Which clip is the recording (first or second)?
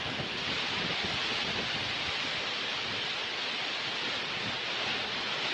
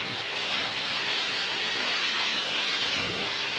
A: first